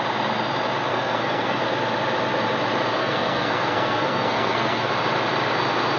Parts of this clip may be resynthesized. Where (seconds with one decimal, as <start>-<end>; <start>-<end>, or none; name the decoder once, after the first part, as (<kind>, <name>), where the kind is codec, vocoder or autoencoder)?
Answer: 0.9-1.6 (codec, SNAC); 3.0-4.9